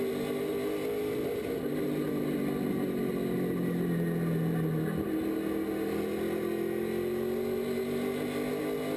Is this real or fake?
real